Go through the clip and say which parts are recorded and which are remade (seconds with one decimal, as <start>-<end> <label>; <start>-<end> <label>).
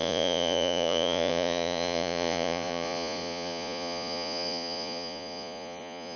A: 0.0-6.2 remade